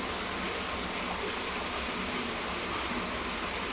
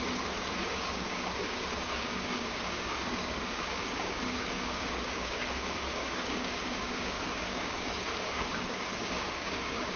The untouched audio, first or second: first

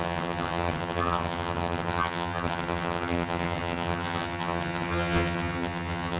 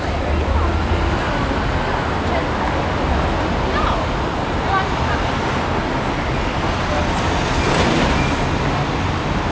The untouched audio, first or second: second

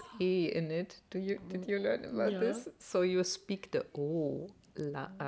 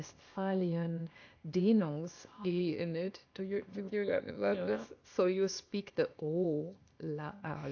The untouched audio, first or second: first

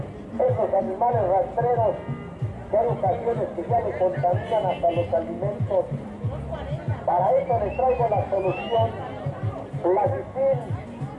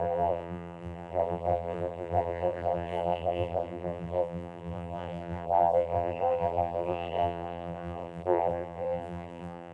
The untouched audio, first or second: first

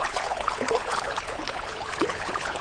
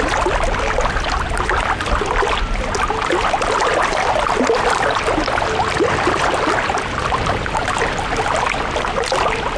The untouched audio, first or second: second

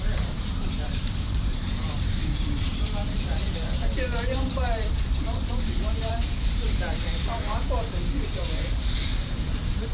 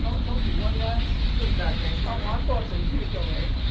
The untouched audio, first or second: second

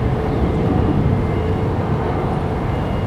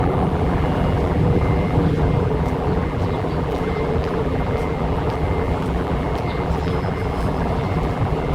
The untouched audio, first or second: first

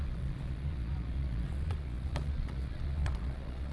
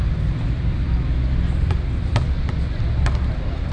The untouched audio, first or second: second